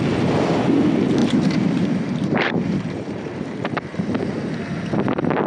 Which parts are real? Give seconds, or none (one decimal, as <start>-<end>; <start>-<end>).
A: 0.0-1.2; 4.5-5.5